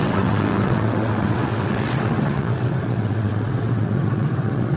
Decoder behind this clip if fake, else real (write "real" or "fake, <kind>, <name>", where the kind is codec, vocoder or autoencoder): fake, vocoder, WaveNeXt